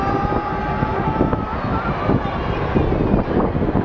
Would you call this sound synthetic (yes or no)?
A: no